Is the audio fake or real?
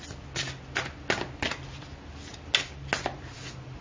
real